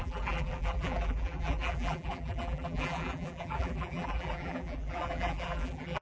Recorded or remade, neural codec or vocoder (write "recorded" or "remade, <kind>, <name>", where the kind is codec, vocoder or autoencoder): remade, vocoder, BigVGAN v2